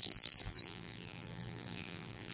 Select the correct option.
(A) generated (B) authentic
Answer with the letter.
A